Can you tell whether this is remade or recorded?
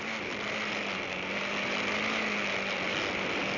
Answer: recorded